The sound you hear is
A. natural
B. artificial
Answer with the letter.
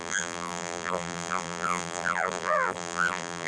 B